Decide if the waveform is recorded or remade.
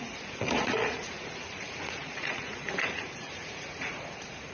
remade